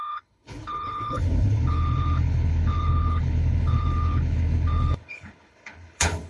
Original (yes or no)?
no